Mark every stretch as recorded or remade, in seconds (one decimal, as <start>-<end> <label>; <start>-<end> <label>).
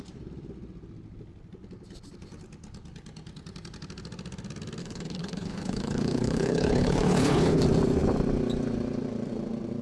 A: 0.0-4.8 recorded; 4.8-7.6 remade; 7.6-9.8 recorded